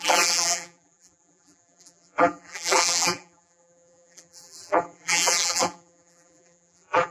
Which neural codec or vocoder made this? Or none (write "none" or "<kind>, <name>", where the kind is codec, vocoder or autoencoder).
vocoder, BigVGAN v2